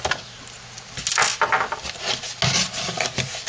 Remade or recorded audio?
recorded